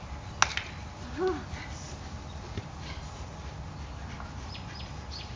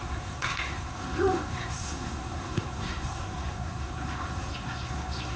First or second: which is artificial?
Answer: second